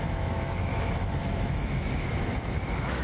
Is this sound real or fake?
fake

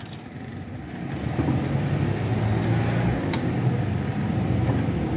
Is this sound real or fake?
real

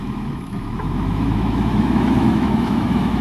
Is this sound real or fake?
fake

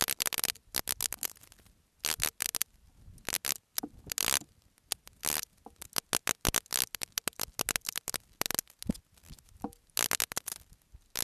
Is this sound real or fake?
real